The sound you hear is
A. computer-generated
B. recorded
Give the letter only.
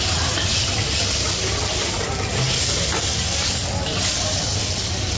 B